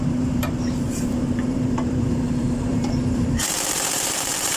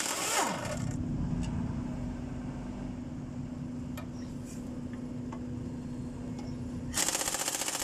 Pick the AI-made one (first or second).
first